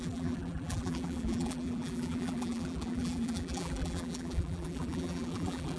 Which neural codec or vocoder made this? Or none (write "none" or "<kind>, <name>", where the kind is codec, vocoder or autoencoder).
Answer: vocoder, BigVGAN v2